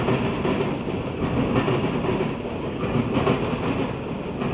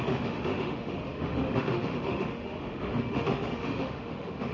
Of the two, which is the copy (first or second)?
second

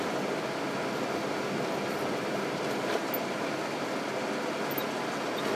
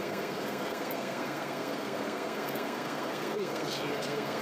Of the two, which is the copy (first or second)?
second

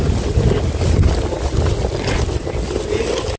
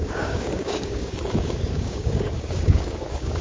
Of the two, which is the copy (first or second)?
second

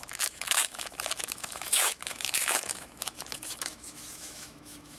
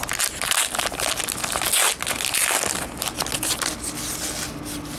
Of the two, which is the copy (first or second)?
first